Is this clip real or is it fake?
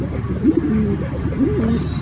real